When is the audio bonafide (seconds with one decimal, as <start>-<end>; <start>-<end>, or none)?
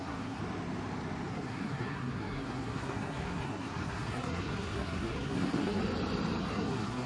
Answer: 0.4-1.3; 5.8-6.4